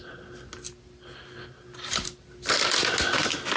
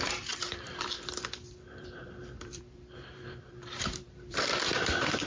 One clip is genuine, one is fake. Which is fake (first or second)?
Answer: second